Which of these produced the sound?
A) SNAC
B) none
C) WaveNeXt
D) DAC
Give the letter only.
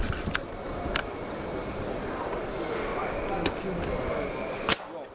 B